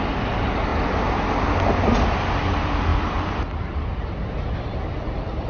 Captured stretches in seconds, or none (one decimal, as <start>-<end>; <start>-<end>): 0.0-5.5

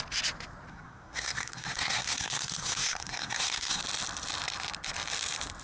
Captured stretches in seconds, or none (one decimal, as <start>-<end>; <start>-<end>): 0.0-0.7; 3.8-5.6

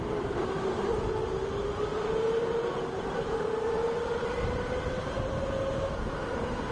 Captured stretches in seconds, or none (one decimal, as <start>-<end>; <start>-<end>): 0.0-6.7

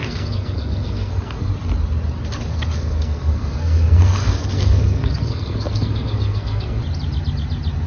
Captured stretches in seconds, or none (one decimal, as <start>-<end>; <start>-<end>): 1.5-2.5; 6.8-7.9